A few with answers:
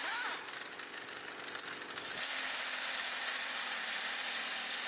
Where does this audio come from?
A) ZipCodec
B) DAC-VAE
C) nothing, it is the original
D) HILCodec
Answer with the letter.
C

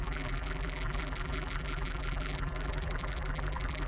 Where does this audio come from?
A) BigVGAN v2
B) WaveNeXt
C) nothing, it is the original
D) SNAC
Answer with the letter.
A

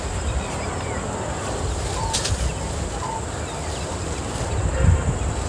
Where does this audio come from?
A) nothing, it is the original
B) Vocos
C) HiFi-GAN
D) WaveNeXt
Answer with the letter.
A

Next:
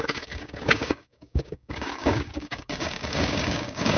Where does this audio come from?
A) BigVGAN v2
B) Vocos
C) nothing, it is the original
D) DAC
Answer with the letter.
D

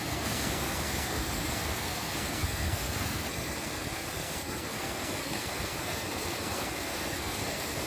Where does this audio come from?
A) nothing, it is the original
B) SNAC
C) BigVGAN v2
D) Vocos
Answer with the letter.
B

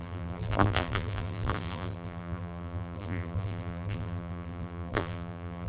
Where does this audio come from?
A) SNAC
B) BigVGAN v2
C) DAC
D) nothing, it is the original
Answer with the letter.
B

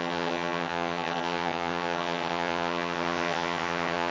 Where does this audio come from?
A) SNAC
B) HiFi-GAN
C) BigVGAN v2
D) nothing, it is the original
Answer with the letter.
B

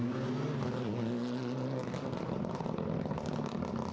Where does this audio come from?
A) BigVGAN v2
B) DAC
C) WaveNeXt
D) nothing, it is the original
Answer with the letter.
D